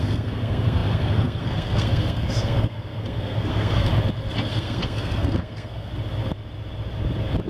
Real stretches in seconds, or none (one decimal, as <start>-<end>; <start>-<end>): 3.9-4.5; 5.9-7.5